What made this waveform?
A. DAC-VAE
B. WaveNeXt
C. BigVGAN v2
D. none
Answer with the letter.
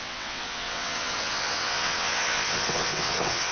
B